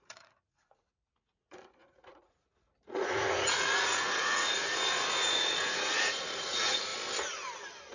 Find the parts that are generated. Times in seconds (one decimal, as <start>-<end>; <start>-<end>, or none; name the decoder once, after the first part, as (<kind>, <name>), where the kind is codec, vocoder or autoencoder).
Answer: 0.0-6.9 (vocoder, Vocos)